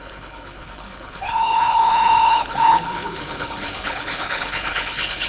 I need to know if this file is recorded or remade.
remade